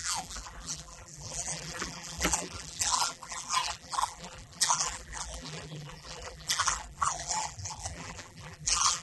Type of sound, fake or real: fake